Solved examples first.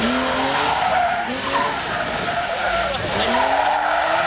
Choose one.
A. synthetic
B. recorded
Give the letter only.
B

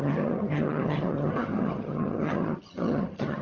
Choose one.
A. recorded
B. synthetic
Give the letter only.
B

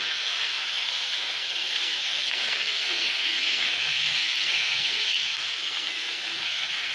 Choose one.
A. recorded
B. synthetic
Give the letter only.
B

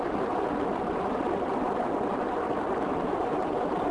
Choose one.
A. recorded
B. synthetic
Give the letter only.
A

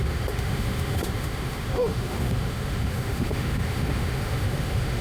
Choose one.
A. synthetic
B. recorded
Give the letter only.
A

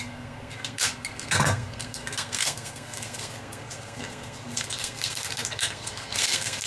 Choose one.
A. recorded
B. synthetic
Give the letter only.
B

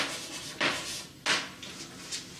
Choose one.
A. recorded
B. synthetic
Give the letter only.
A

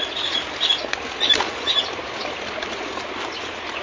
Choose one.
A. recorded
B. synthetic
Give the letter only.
A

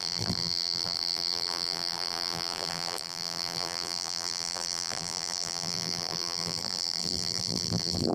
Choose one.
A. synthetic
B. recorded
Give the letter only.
A